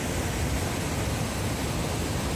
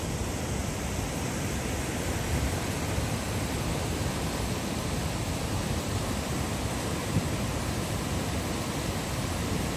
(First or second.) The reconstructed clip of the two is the second